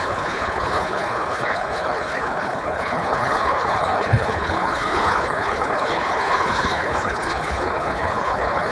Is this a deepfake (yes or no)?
yes